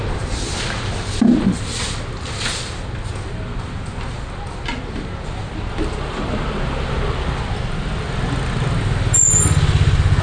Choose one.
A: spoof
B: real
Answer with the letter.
B